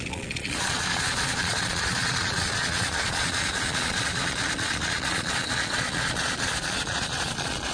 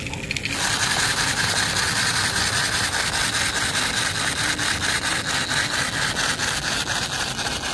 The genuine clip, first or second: second